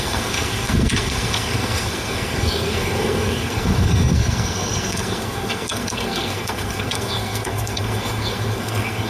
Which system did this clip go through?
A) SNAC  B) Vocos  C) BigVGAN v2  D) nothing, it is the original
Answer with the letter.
A